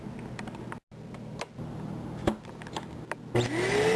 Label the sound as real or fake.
real